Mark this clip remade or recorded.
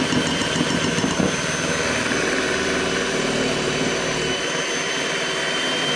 remade